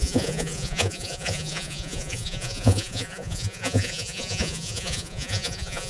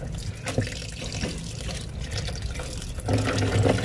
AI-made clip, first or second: first